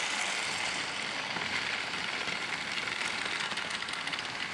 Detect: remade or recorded recorded